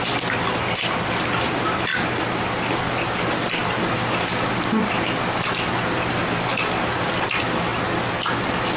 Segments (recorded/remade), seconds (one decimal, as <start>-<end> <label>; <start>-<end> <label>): 0.0-1.9 remade; 1.9-2.7 recorded; 2.7-7.7 remade; 7.7-8.8 recorded